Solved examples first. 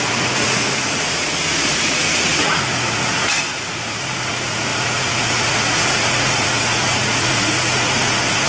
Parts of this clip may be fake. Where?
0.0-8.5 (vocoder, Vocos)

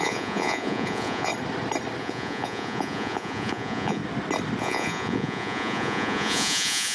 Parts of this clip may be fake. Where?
0.0-1.3 (vocoder, Vocos); 2.0-4.0; 4.6-6.9

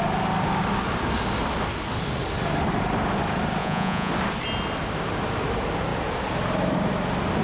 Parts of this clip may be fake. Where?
3.6-4.1 (vocoder, Vocos)